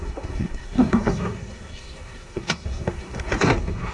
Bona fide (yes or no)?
no